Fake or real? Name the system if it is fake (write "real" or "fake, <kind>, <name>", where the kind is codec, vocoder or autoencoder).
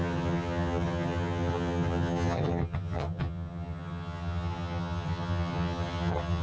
fake, vocoder, HiFi-GAN